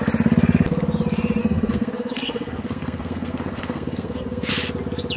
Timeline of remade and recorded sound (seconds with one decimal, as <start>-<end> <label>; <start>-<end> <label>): 0.0-1.4 recorded; 1.4-4.5 remade; 4.5-5.2 recorded